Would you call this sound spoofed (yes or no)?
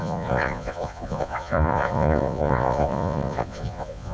yes